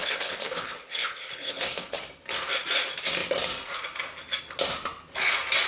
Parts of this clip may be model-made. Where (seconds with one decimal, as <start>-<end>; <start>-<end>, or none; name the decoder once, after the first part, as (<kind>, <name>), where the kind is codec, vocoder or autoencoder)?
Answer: 0.0-2.0 (codec, HILCodec)